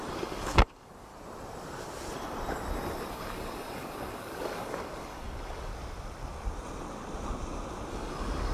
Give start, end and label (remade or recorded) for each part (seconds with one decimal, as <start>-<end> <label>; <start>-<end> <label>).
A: 0.0-1.1 remade; 1.1-3.1 recorded; 3.1-5.7 remade; 5.7-7.9 recorded; 7.9-8.5 remade